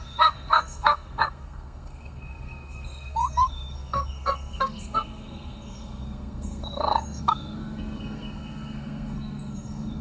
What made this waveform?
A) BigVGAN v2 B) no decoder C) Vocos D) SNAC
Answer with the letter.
D